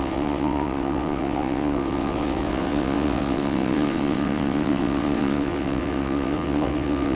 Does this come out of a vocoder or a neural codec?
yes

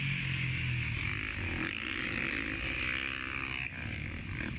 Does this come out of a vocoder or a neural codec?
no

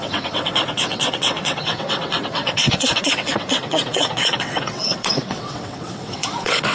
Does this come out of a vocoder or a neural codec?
yes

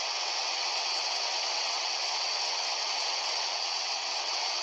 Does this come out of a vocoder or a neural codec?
yes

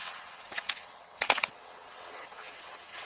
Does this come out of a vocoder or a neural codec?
yes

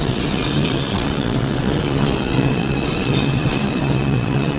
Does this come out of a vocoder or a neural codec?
yes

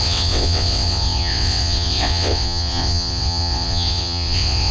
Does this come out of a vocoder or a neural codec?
yes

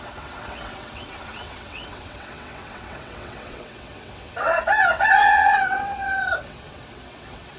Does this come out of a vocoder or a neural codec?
yes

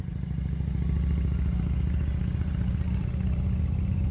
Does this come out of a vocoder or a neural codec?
no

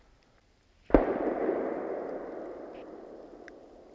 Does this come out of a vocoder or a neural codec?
no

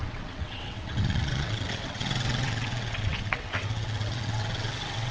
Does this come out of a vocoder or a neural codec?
yes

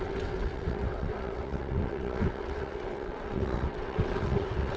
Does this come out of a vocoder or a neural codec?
yes